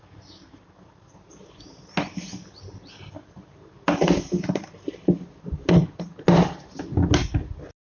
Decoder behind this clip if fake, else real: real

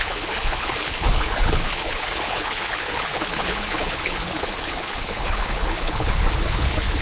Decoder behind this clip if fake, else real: fake, codec, HILCodec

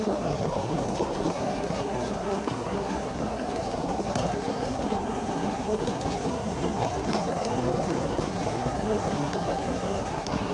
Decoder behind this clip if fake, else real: fake, codec, SNAC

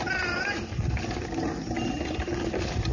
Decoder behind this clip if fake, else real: real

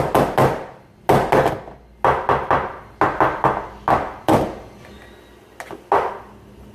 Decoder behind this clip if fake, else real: real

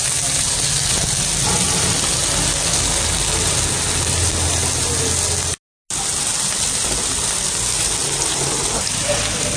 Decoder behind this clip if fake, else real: real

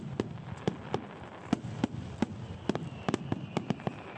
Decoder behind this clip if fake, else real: real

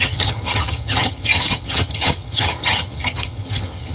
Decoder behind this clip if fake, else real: fake, vocoder, HiFi-GAN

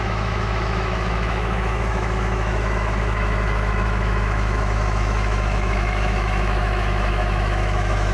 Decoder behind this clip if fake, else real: fake, autoencoder, DAC-VAE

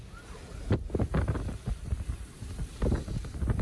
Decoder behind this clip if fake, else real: real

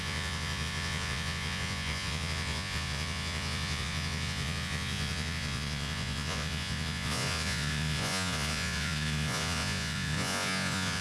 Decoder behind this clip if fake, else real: fake, vocoder, Vocos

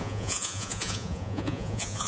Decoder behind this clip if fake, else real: fake, vocoder, Vocos